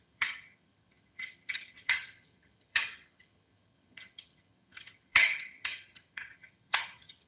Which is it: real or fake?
fake